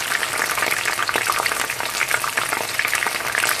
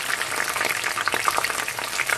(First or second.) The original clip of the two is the first